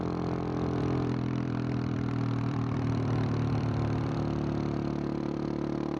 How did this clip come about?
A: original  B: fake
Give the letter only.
B